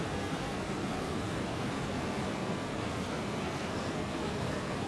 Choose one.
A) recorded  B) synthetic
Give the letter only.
B